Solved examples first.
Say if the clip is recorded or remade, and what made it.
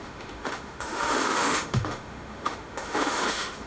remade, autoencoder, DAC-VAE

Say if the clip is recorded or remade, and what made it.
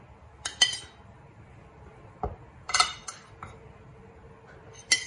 remade, vocoder, BigVGAN v2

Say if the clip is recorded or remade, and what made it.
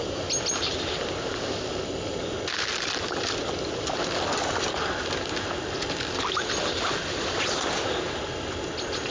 recorded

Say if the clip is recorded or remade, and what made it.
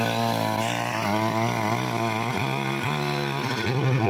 recorded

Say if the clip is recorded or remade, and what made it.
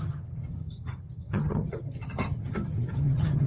remade, vocoder, HiFi-GAN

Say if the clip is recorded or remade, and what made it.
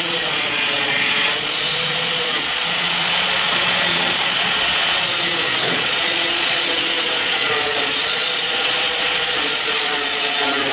remade, vocoder, Vocos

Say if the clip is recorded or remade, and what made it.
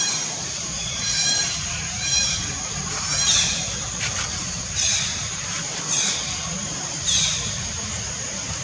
remade, vocoder, BigVGAN v2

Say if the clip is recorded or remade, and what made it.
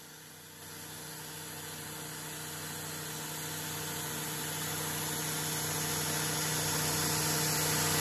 recorded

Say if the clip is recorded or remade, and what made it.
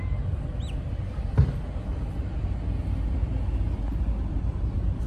recorded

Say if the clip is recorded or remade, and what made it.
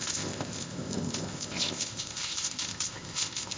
remade, codec, ZipCodec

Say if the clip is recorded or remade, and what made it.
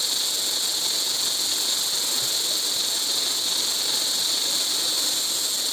recorded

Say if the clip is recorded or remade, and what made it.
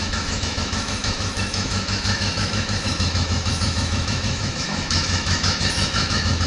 remade, autoencoder, DAC-VAE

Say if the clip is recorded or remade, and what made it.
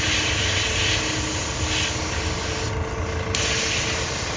recorded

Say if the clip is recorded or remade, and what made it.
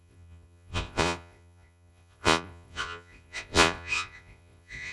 remade, vocoder, Vocos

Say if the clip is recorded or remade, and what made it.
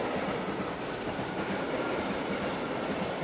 recorded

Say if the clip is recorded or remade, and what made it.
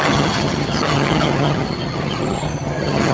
remade, vocoder, HiFi-GAN